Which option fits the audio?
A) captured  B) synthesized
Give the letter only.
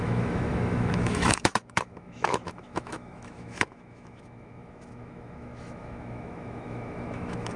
B